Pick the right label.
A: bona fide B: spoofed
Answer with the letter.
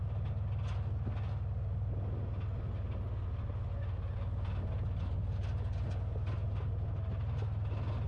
A